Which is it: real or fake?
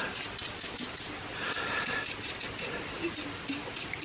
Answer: real